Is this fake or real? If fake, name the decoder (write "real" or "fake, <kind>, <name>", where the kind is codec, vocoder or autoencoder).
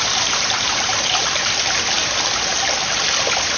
real